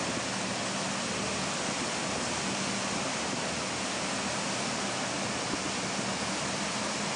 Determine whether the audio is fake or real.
real